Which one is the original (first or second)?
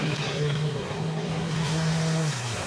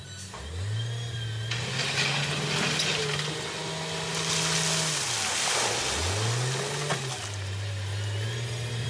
second